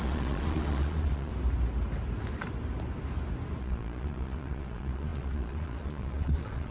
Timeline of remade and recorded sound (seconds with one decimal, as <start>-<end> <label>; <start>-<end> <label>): 0.0-1.3 remade; 1.3-3.6 recorded; 3.6-6.7 remade